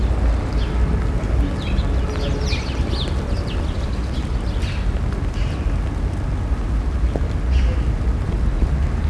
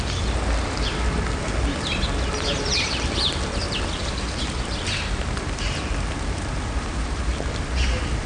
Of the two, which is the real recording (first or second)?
first